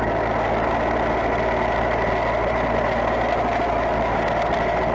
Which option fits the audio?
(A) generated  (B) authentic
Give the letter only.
B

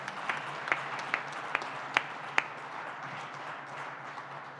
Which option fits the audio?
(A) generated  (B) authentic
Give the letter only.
B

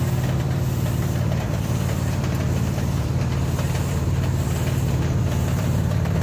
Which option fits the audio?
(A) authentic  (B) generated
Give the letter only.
B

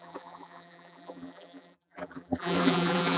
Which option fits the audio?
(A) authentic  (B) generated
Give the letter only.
B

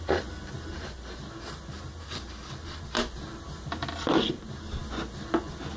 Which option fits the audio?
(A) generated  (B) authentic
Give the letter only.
B